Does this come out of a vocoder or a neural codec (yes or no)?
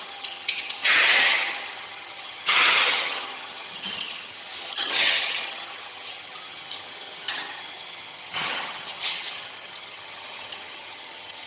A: yes